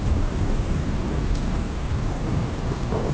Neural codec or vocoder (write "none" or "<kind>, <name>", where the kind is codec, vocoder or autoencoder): codec, DAC